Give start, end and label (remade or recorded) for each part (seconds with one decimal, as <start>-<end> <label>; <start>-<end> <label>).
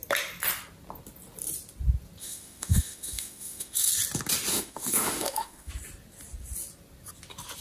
0.0-2.2 recorded; 2.2-3.9 remade; 3.9-4.5 recorded; 4.5-5.7 remade; 5.7-7.6 recorded